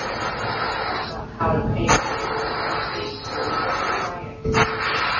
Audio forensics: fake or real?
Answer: real